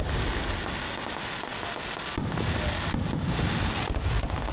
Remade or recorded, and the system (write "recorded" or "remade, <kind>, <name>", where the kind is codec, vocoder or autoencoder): recorded